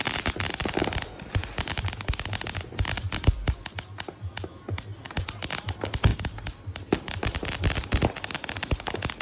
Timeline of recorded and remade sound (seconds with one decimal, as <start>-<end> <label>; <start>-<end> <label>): 0.0-9.2 recorded